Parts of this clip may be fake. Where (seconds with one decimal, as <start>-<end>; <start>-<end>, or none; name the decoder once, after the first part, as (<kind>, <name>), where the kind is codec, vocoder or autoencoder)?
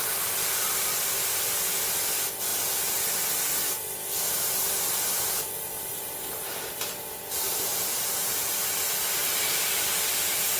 2.5-3.0 (vocoder, BigVGAN v2); 5.9-8.7; 9.2-10.1